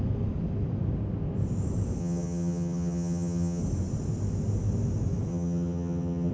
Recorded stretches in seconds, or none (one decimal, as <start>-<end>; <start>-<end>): 0.0-2.0; 3.6-5.3